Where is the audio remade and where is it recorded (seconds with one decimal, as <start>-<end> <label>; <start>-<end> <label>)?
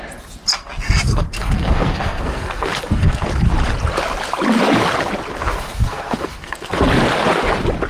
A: 0.0-0.5 recorded; 0.5-3.3 remade; 3.3-5.4 recorded; 5.4-6.8 remade; 6.8-7.9 recorded